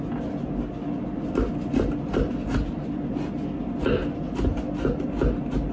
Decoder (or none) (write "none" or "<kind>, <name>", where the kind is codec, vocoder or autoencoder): none